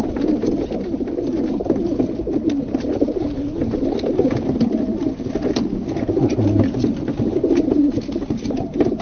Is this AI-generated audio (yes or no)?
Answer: no